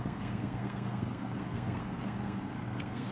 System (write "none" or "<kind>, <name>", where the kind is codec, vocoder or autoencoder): codec, SNAC